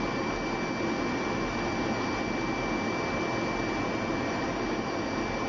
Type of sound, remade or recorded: recorded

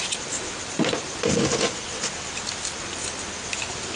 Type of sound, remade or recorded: recorded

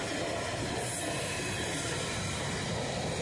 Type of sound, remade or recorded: recorded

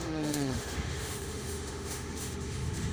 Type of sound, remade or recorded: remade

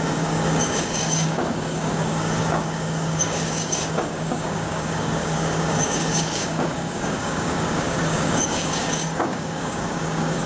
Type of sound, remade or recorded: remade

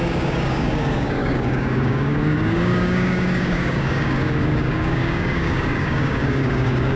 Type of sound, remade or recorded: remade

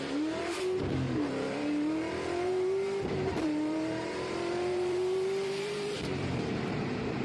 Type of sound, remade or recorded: remade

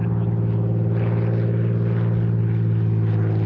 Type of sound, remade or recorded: recorded